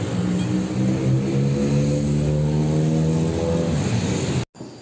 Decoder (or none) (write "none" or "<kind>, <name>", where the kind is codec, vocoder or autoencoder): none